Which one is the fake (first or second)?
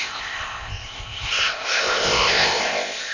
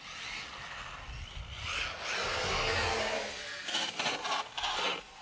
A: first